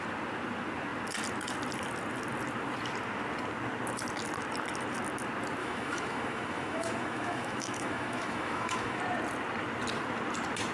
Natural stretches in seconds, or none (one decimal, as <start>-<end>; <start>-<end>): 0.0-5.6; 9.0-10.7